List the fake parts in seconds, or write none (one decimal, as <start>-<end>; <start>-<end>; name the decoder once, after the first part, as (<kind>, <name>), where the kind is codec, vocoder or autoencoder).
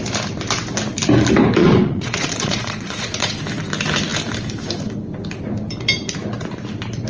1.6-3.4 (vocoder, Vocos)